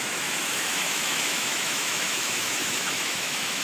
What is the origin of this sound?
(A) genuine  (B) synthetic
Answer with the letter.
B